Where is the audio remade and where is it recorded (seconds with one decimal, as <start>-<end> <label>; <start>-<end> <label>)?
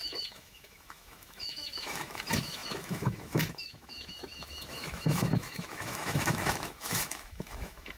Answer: 0.0-8.0 remade